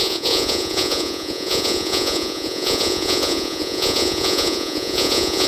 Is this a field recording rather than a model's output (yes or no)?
no